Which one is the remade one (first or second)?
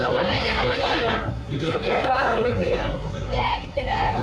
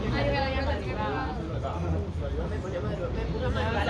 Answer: first